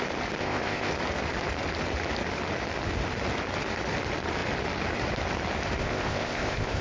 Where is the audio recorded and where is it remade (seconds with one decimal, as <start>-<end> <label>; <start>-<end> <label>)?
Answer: 0.0-0.4 recorded; 0.4-0.9 remade; 0.9-5.8 recorded; 5.8-6.8 remade